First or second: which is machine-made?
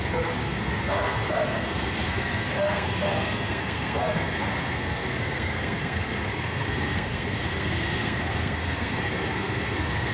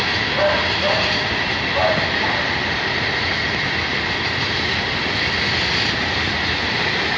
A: first